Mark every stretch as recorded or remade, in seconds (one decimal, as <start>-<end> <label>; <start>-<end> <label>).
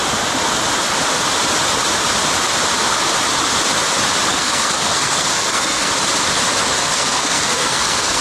0.0-4.3 recorded; 4.3-5.9 remade; 5.9-6.6 recorded; 6.6-8.2 remade